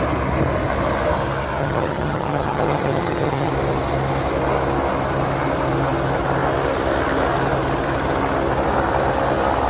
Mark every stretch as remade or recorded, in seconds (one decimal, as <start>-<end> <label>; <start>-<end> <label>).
0.0-1.6 recorded; 1.6-3.5 remade; 3.5-9.7 recorded